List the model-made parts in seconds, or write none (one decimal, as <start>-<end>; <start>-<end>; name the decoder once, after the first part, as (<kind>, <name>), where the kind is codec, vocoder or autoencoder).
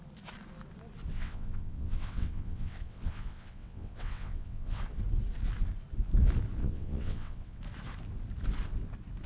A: 1.1-4.8 (vocoder, WaveNeXt); 6.6-7.6